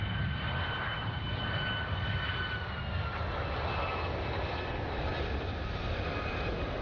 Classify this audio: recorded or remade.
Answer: recorded